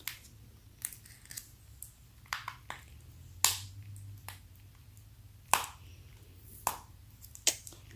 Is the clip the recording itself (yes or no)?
yes